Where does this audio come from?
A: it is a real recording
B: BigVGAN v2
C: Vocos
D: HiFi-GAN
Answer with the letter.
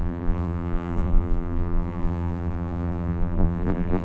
B